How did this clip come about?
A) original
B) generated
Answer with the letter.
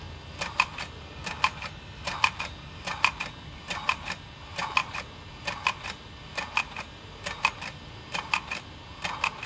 B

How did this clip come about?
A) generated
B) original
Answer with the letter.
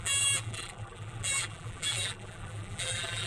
A